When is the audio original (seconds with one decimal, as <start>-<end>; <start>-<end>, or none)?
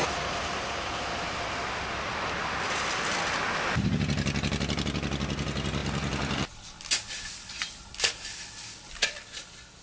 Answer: 0.0-9.8